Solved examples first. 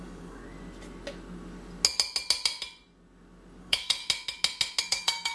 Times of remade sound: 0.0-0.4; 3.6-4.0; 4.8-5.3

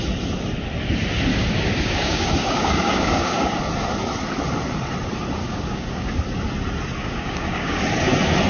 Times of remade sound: 1.3-3.6; 5.4-6.1; 7.0-7.8

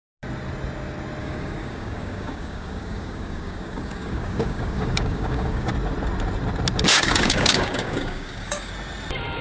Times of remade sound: 1.2-5.7; 6.9-8.7

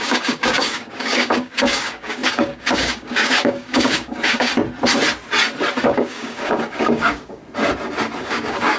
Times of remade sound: 0.0-4.5; 5.8-7.4; 8.2-8.8

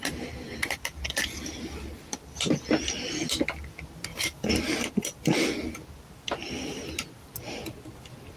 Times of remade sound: none

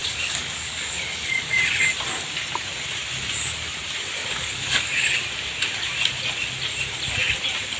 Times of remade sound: 0.0-1.6; 4.2-5.2

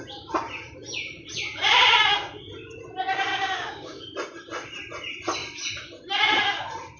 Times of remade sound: 3.3-4.0

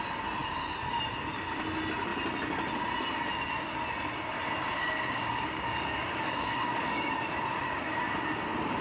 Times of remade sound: 4.8-7.1